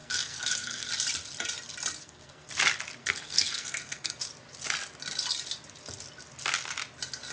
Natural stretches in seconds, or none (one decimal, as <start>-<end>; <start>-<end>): 0.9-2.0; 2.5-3.0; 4.1-7.3

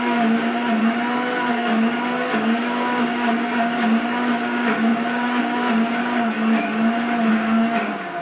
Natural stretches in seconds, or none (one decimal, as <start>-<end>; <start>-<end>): 0.8-1.5; 6.0-7.3

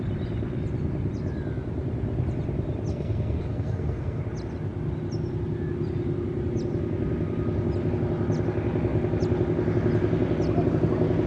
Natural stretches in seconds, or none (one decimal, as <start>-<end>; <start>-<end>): 0.0-2.9; 4.2-11.3

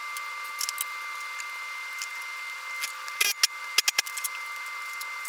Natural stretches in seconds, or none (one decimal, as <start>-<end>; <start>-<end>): 0.0-5.3